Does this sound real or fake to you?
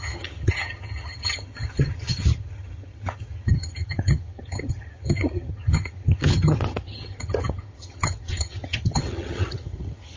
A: fake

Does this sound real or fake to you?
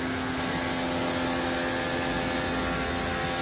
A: real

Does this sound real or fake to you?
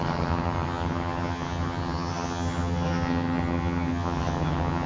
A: fake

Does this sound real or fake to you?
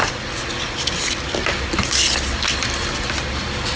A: real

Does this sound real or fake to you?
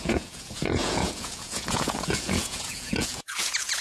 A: fake